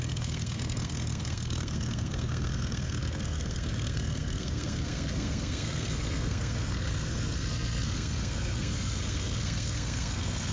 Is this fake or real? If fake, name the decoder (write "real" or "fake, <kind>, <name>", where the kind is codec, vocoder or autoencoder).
fake, codec, SNAC